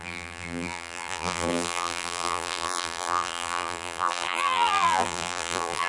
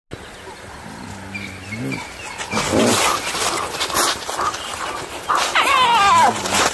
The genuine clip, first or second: second